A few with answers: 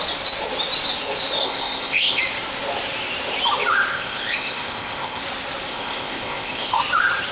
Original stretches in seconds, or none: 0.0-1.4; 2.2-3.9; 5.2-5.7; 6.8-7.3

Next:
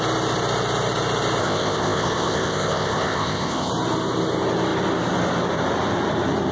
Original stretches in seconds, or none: 0.0-1.4; 3.7-6.5